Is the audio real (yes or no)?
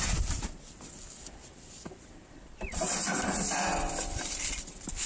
no